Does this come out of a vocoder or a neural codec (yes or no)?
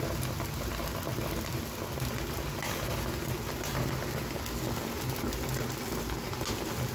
no